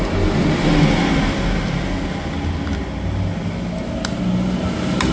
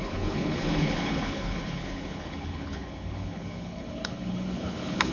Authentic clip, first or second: first